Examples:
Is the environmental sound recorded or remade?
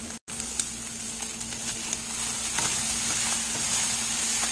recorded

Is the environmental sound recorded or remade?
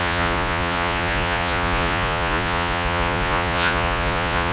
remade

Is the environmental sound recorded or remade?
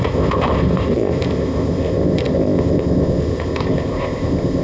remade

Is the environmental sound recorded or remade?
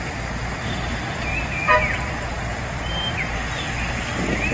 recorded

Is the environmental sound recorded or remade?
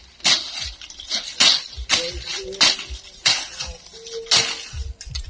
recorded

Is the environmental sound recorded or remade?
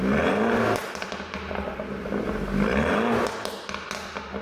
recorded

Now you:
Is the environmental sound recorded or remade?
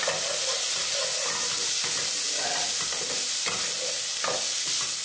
recorded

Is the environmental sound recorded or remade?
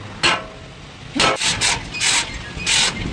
recorded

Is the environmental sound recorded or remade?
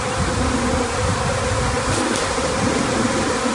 recorded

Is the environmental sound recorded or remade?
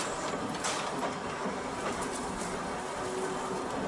recorded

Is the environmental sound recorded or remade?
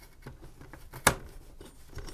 recorded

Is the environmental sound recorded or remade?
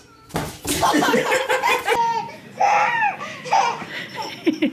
recorded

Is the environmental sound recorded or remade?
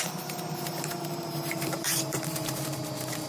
remade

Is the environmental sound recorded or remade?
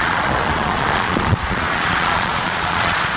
remade